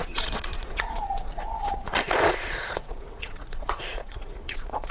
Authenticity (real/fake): fake